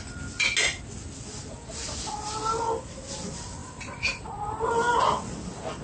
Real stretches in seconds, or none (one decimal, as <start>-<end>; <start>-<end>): 0.0-3.6; 4.7-5.8